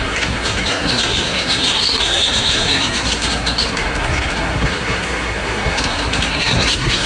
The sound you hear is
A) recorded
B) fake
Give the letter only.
B